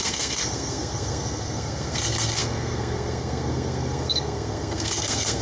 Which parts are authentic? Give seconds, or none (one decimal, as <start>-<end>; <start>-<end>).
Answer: none